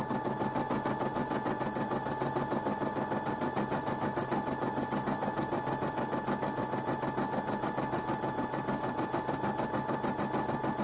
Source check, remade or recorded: recorded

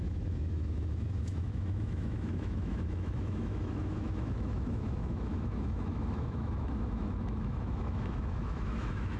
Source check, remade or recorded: remade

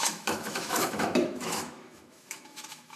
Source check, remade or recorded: remade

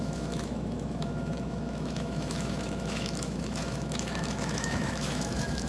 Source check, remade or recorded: remade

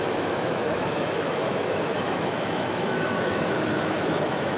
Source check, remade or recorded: remade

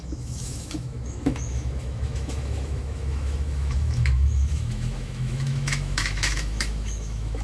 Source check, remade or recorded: remade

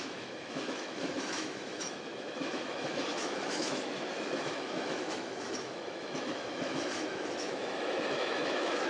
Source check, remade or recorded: remade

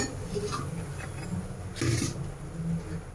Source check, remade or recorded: recorded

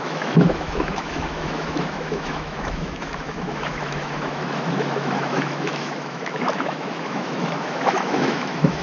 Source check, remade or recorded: remade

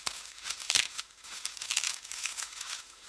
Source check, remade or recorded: remade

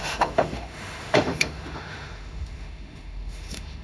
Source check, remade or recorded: remade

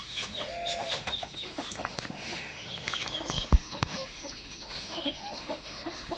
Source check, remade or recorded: remade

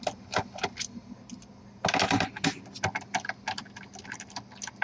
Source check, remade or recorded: recorded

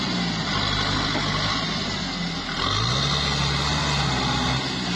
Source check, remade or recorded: recorded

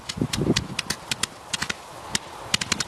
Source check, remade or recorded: recorded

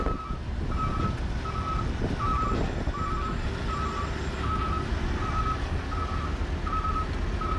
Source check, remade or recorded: recorded